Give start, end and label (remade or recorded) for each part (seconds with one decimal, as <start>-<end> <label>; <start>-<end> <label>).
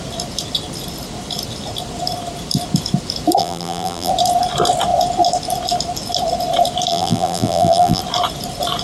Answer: 0.0-3.4 recorded; 3.4-4.1 remade; 4.1-6.9 recorded; 6.9-8.0 remade; 8.0-8.8 recorded